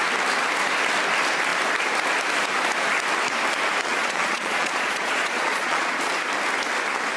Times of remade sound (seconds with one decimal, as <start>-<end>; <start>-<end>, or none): 3.9-6.1